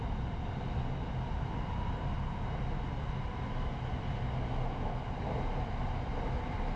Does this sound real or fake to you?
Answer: real